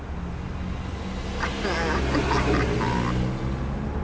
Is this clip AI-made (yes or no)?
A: no